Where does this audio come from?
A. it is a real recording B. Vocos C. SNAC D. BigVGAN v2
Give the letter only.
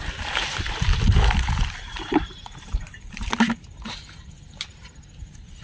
D